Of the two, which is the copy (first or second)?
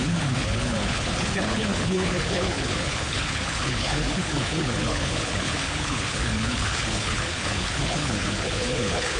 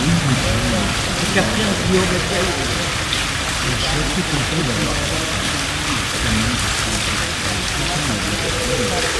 first